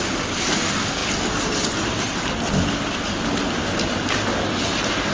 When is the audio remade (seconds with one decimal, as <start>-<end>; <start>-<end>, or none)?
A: none